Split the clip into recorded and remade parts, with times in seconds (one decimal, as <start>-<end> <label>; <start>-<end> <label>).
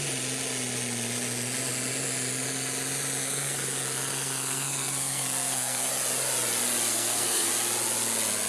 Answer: 0.0-3.2 recorded; 3.2-5.9 remade; 5.9-6.9 recorded; 6.9-7.5 remade; 7.5-8.5 recorded